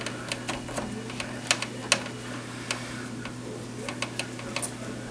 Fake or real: real